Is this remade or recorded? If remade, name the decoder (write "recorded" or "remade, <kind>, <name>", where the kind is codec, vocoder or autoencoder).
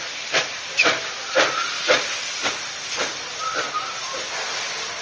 remade, vocoder, BigVGAN v2